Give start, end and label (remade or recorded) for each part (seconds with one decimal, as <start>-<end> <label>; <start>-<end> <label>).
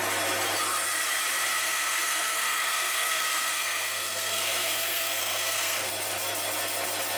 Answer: 0.0-1.6 recorded; 1.6-5.9 remade; 5.9-7.2 recorded